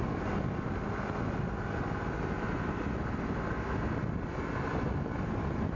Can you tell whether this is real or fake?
real